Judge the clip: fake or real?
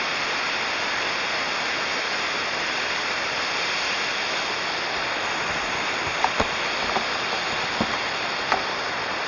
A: real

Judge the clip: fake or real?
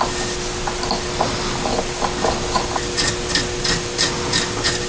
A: real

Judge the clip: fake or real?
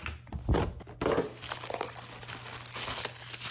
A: real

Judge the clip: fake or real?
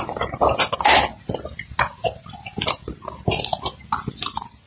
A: real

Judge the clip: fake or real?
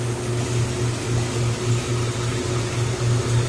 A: real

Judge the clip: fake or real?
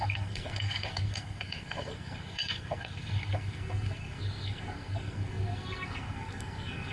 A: fake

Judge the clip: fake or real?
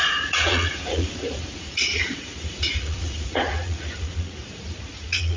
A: fake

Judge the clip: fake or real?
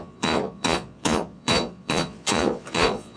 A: fake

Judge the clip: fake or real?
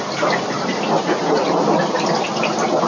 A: real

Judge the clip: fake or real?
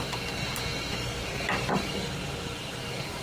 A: real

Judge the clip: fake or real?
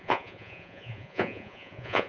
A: fake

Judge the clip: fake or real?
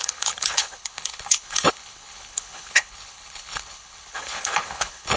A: fake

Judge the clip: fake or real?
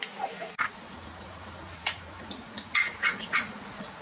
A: fake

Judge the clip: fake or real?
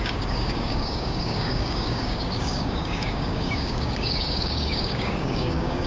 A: fake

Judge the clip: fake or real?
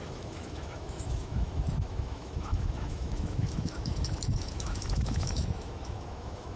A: fake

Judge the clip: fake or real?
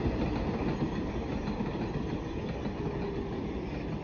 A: real